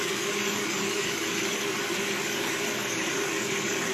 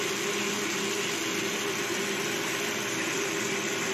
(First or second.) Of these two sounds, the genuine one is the second